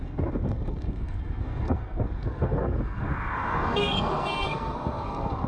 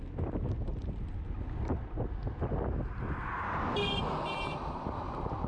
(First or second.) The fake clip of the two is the first